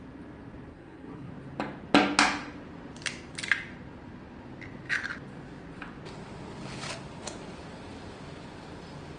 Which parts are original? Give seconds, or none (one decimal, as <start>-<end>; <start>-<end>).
0.0-0.7; 1.3-9.2